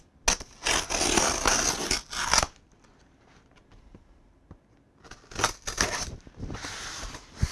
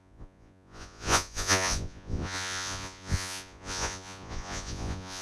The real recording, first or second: first